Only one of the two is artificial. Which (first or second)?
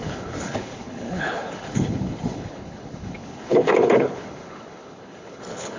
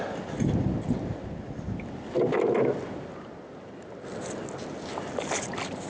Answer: first